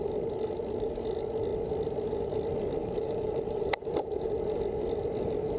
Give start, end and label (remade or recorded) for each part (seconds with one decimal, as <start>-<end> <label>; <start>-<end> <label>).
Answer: 0.0-2.8 recorded; 2.8-3.9 remade; 3.9-5.6 recorded